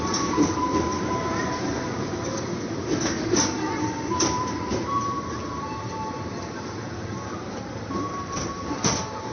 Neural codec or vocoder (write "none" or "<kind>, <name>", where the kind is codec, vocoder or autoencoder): vocoder, BigVGAN v2